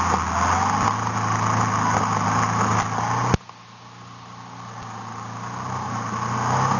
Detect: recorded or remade recorded